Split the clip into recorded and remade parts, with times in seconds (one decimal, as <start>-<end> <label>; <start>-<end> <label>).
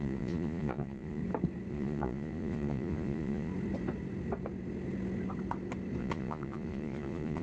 0.0-1.2 remade; 1.2-1.7 recorded; 1.7-3.5 remade; 3.5-6.0 recorded; 6.0-7.4 remade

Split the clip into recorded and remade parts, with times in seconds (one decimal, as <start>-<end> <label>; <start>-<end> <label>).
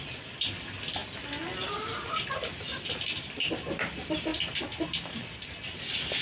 0.0-6.2 recorded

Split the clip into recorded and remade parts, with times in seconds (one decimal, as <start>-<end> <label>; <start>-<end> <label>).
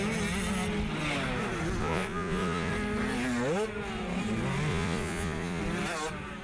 0.0-1.8 recorded; 1.8-2.7 remade; 2.7-4.7 recorded; 4.7-5.6 remade; 5.6-6.4 recorded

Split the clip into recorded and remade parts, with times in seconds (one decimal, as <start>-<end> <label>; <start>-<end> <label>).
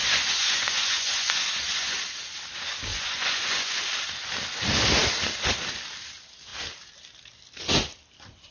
0.0-2.0 remade; 2.0-2.9 recorded; 2.9-3.8 remade; 3.8-8.5 recorded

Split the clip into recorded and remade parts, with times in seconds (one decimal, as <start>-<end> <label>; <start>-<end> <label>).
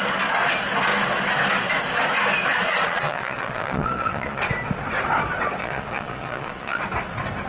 0.0-2.5 recorded; 2.5-4.4 remade; 4.4-5.6 recorded; 5.6-6.8 remade; 6.8-7.5 recorded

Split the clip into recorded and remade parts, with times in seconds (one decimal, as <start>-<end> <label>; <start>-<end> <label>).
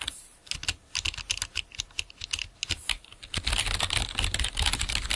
0.0-5.2 recorded